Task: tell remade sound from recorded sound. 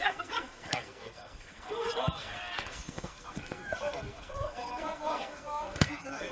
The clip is remade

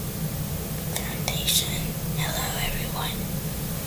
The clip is recorded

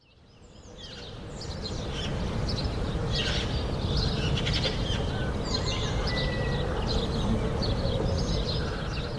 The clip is recorded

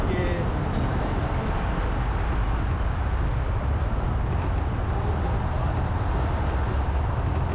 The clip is recorded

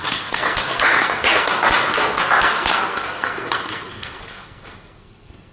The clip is remade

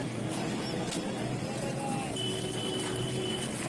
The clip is recorded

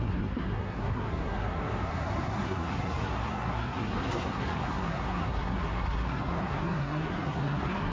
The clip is remade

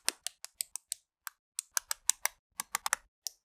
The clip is recorded